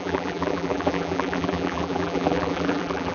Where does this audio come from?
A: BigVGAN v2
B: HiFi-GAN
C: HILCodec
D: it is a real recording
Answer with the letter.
A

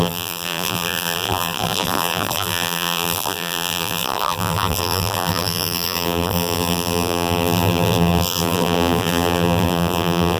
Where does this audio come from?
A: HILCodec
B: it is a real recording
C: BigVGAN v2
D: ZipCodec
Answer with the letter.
C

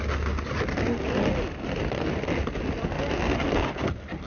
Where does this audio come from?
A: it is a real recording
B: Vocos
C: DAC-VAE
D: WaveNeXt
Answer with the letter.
A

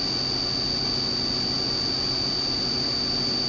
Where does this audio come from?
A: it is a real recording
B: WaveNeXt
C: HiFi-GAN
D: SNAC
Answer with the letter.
A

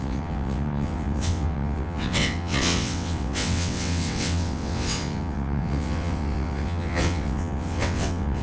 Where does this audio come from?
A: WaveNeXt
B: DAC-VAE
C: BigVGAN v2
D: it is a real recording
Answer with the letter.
A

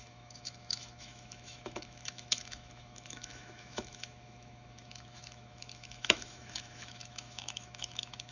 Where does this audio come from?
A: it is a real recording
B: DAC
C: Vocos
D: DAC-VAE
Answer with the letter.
D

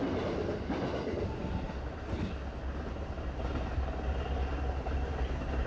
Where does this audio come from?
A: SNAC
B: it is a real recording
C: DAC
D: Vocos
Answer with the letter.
B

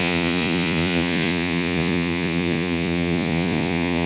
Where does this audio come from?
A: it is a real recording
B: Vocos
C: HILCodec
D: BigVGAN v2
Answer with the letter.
B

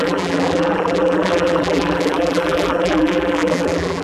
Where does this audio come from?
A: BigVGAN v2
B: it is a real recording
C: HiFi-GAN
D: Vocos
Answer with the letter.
A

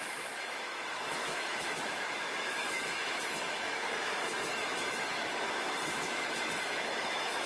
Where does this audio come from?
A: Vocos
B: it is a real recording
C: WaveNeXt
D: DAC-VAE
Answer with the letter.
D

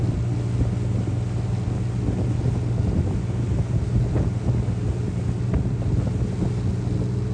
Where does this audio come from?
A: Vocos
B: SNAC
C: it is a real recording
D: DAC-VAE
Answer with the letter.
C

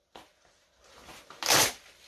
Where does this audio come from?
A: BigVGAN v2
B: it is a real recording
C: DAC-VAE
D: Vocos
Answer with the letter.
B